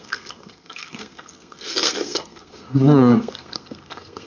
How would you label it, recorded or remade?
remade